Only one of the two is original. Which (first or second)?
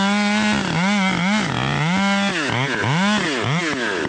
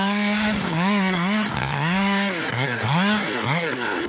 first